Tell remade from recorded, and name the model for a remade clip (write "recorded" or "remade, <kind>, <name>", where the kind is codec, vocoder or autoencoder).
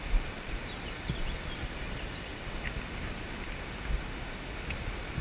recorded